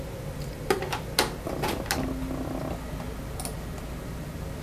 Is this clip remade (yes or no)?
no